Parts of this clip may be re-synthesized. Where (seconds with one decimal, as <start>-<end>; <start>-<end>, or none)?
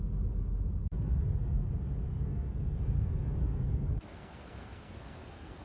0.8-1.7; 2.1-5.6